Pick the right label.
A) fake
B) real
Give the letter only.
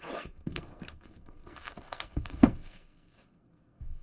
A